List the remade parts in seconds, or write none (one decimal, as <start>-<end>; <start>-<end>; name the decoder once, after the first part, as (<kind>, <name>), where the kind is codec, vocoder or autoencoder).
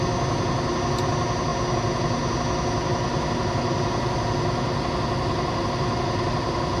none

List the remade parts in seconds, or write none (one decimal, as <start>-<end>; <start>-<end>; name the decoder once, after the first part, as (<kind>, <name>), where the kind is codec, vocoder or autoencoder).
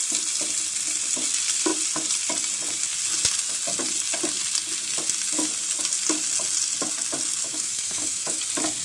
7.4-8.4 (autoencoder, DAC-VAE)